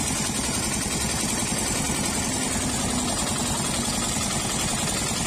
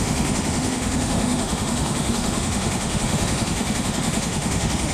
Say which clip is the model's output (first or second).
second